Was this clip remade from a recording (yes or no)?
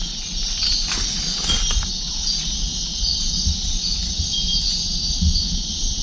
no